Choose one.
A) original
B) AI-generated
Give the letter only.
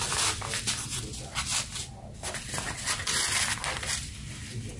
A